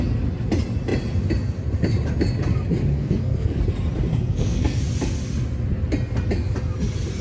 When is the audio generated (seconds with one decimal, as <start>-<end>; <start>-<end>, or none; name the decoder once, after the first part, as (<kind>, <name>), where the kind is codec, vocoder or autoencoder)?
2.9-3.6 (codec, SNAC); 4.1-4.8